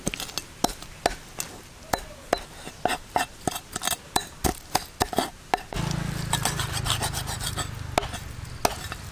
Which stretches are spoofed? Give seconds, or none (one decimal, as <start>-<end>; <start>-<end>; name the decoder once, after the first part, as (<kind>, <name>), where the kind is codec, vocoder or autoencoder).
none